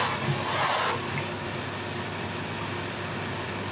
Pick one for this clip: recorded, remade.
recorded